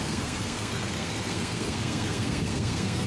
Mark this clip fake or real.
fake